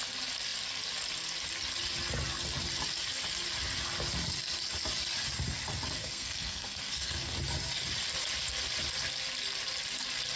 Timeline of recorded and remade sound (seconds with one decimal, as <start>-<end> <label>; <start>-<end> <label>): 0.0-6.0 recorded; 6.0-7.3 remade; 7.3-10.4 recorded